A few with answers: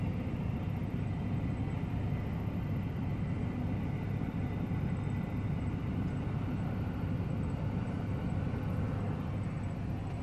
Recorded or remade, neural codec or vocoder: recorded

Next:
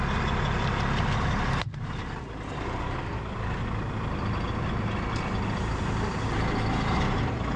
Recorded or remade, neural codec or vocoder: recorded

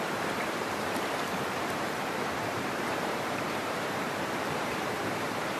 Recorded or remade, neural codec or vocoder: remade, vocoder, BigVGAN v2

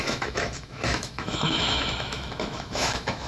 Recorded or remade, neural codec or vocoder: remade, autoencoder, DAC-VAE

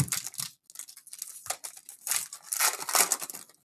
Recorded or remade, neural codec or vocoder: recorded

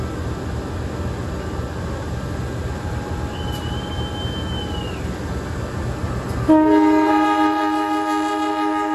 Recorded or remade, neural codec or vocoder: recorded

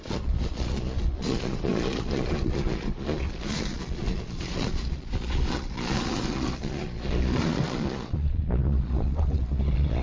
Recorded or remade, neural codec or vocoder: remade, vocoder, Vocos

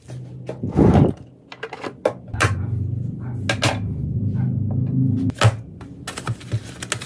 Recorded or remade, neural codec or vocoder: recorded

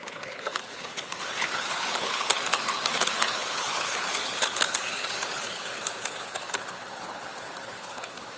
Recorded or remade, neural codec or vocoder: remade, codec, HILCodec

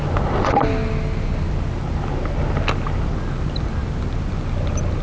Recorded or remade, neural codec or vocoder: recorded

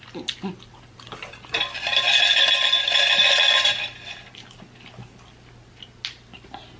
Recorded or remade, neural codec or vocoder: recorded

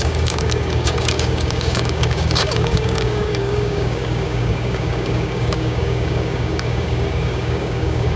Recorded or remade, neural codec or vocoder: remade, codec, DAC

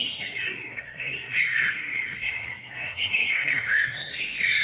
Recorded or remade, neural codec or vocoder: remade, codec, SNAC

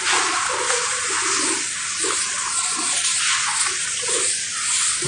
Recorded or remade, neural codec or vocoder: recorded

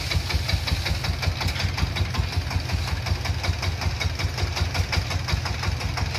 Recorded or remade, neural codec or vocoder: recorded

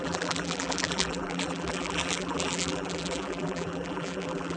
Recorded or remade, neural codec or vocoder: remade, vocoder, BigVGAN v2